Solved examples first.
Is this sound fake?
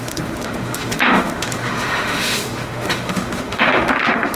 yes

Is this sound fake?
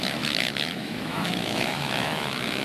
yes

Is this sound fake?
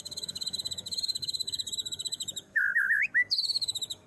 yes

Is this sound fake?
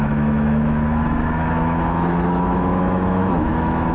yes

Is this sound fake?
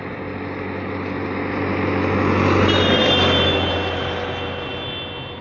no